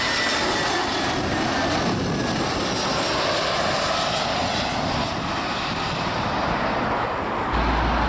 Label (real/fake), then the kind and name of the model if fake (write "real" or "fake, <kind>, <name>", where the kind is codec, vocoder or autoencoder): real